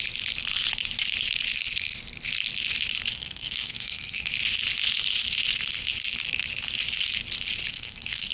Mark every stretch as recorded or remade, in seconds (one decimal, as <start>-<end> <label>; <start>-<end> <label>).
0.0-3.1 recorded; 3.1-4.3 remade; 4.3-7.7 recorded; 7.7-8.3 remade

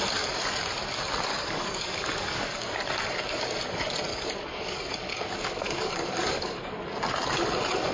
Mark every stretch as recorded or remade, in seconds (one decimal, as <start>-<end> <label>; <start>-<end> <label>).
0.0-1.3 recorded; 1.3-2.8 remade; 2.8-4.1 recorded; 4.1-6.7 remade; 6.7-7.9 recorded